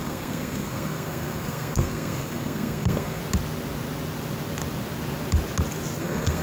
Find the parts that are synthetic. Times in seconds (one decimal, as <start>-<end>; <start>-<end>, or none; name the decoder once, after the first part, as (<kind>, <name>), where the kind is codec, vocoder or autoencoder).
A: 0.0-3.2 (codec, SNAC); 6.0-6.4

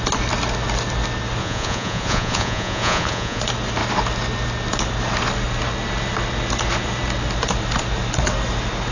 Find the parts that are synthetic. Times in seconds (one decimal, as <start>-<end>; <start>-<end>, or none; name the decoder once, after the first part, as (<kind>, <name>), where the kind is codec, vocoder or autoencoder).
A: 1.4-3.4 (vocoder, Vocos)

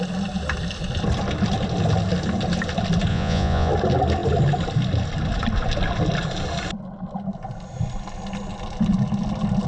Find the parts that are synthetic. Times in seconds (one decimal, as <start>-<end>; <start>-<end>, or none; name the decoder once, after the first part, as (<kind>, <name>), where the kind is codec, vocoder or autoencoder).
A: 3.1-3.7 (vocoder, Vocos)

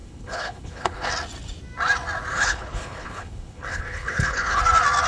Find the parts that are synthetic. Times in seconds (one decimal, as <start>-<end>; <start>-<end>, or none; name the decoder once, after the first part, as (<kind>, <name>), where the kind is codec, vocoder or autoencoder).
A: 0.0-1.1 (codec, HILCodec); 2.3-4.6

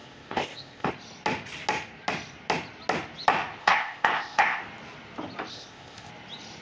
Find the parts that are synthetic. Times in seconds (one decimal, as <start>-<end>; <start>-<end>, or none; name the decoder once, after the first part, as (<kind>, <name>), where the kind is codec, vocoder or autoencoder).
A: 0.0-0.9 (codec, ZipCodec); 3.6-4.6; 5.5-6.1

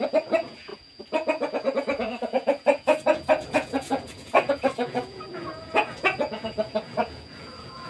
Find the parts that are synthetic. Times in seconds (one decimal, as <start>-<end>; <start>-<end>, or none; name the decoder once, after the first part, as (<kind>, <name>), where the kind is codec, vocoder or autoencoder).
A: 0.0-7.9 (vocoder, Vocos)